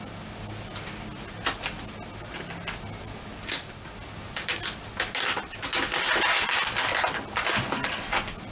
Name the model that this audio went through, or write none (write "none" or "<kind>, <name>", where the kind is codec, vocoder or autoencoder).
none